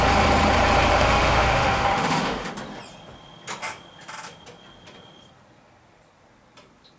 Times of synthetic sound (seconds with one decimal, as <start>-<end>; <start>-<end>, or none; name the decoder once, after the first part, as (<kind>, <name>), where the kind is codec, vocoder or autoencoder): 0.9-2.5 (autoencoder, DAC-VAE)